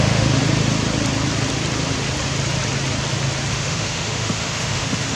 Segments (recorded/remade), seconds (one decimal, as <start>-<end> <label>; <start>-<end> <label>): 0.0-0.4 remade; 0.4-3.5 recorded; 3.5-5.2 remade